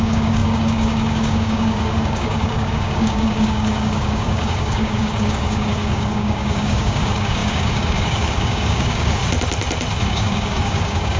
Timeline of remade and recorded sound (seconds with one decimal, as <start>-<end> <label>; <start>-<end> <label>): 0.0-9.2 remade; 9.2-10.1 recorded; 10.1-11.2 remade